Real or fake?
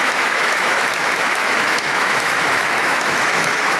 fake